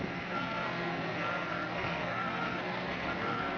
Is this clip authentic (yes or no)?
no